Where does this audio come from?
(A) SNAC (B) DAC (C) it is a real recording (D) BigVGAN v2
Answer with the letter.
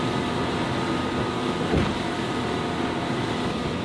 C